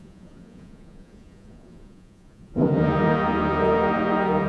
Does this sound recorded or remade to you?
remade